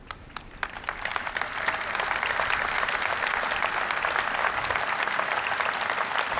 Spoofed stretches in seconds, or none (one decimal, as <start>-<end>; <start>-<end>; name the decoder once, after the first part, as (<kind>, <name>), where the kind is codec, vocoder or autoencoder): none